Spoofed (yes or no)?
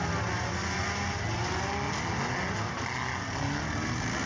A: no